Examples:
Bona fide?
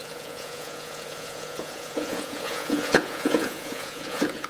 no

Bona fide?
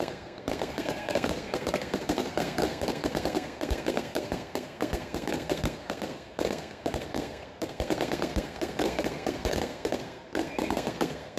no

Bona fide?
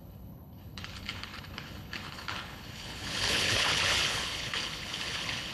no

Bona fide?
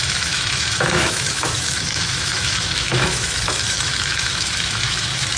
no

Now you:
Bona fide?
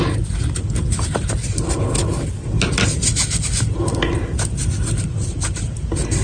yes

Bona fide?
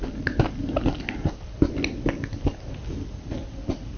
yes